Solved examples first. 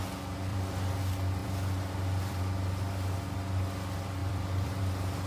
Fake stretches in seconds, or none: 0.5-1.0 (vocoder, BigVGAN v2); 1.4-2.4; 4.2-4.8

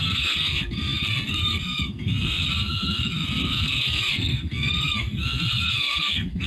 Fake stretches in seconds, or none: 0.0-6.5 (codec, SNAC)

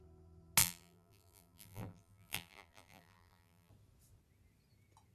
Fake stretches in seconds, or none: 0.6-3.7 (vocoder, BigVGAN v2)

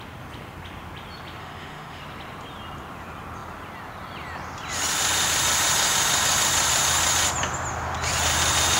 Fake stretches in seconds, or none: 1.4-2.0 (autoencoder, DAC-VAE)

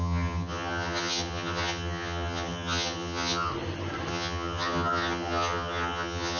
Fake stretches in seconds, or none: 0.0-3.5 (vocoder, HiFi-GAN); 4.1-6.4

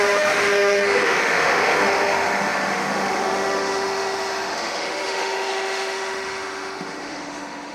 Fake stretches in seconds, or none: 0.0-7.7 (autoencoder, DAC-VAE)